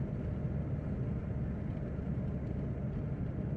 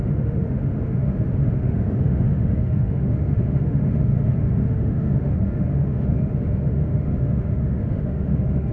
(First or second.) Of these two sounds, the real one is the first